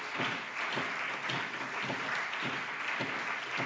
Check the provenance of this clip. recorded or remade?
recorded